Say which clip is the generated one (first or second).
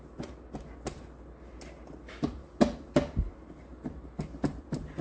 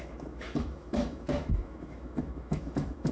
second